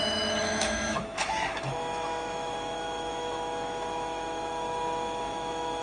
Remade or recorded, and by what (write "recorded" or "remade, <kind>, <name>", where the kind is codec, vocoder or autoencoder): remade, autoencoder, DAC-VAE